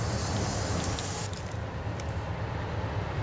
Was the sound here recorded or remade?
recorded